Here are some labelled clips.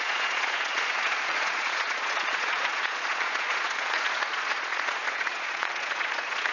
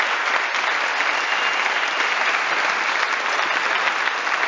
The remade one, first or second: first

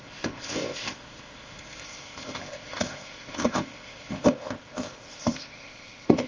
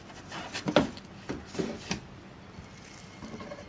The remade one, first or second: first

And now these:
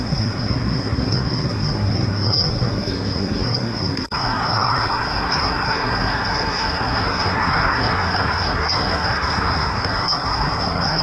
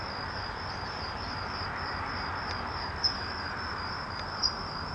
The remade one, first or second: first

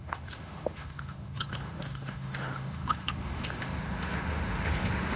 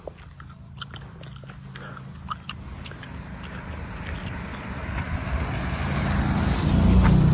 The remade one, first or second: first